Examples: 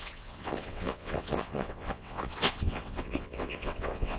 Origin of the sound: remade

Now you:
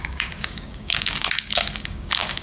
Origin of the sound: remade